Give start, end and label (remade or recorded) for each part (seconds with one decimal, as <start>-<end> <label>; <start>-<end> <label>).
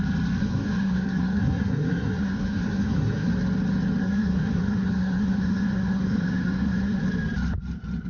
0.0-0.4 recorded; 0.4-3.3 remade; 3.3-4.0 recorded; 4.0-7.0 remade; 7.0-8.1 recorded